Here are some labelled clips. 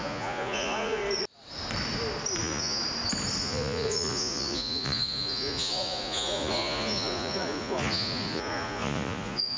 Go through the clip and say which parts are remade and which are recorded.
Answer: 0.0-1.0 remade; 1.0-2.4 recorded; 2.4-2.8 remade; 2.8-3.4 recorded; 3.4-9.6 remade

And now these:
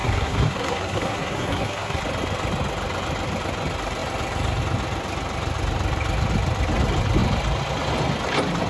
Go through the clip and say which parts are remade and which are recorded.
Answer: 0.0-2.0 remade; 2.0-8.7 recorded

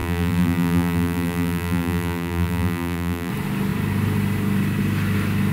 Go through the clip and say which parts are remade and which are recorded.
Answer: 0.0-3.3 remade; 3.3-5.5 recorded

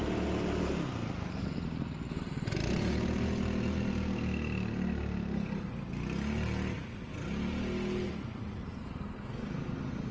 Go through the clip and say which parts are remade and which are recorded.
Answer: 0.0-10.1 recorded